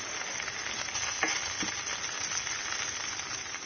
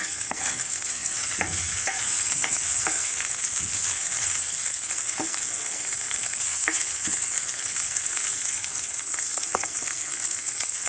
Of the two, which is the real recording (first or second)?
first